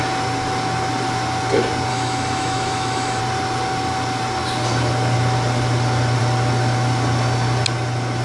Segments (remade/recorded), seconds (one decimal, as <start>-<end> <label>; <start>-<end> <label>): 0.0-1.9 recorded; 1.9-3.2 remade; 3.2-8.2 recorded